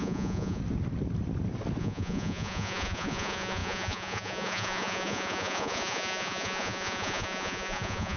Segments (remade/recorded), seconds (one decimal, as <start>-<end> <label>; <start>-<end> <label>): 0.0-0.6 remade; 0.6-1.8 recorded; 1.8-8.2 remade